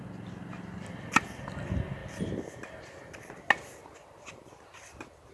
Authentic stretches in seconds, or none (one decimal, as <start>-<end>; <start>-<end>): 0.0-5.3